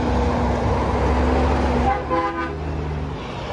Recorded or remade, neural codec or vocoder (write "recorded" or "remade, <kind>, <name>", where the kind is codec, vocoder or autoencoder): recorded